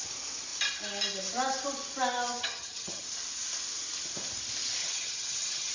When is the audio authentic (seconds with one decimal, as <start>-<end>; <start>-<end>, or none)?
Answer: 0.0-2.4; 3.0-4.8